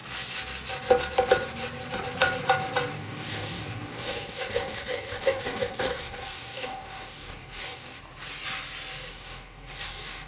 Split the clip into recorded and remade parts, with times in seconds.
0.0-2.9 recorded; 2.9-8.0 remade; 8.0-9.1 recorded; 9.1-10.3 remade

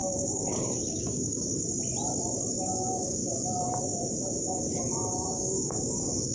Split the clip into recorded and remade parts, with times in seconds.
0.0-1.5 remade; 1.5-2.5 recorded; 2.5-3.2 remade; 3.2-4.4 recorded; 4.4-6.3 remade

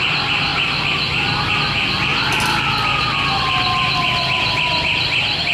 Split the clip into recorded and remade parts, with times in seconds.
0.0-5.5 recorded

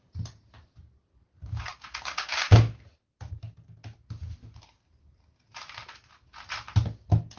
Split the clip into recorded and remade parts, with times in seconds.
0.0-1.4 recorded; 1.4-2.8 remade; 2.8-7.4 recorded

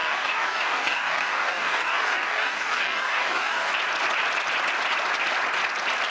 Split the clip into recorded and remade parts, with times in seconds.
0.0-3.7 remade; 3.7-6.1 recorded

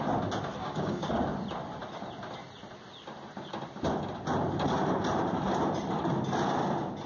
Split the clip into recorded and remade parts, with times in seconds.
0.0-0.6 recorded; 0.6-1.1 remade; 1.1-7.1 recorded